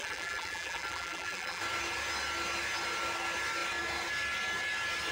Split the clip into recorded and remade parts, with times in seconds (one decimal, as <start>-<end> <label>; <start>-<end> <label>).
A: 0.0-1.6 remade; 1.6-5.1 recorded